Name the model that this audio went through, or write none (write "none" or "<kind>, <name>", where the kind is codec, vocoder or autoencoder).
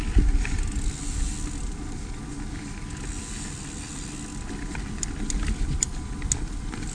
none